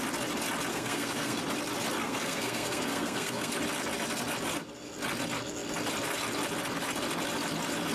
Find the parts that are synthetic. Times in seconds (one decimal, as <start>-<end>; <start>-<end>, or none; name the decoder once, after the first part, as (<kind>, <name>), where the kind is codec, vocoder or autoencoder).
0.7-1.4 (codec, SNAC); 2.0-3.5